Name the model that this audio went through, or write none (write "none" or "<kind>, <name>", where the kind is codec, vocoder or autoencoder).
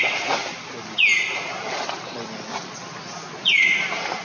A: none